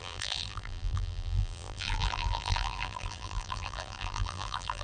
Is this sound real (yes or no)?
no